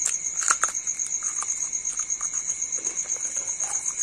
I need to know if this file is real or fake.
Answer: fake